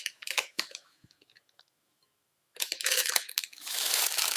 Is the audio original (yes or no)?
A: no